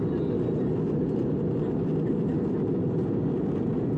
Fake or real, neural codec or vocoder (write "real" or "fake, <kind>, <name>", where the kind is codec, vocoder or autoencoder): real